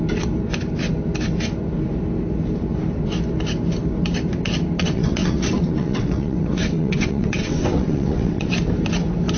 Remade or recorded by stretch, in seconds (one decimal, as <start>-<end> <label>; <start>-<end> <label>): 0.0-4.8 recorded; 4.8-8.5 remade; 8.5-9.4 recorded